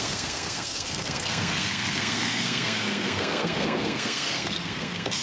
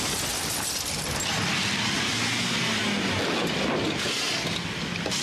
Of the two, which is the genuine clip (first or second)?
second